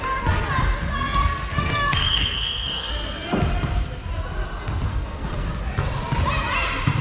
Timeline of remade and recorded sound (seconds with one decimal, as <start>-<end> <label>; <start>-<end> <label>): 0.0-1.2 recorded; 1.2-2.9 remade; 2.9-4.9 recorded; 4.9-5.5 remade; 5.5-7.0 recorded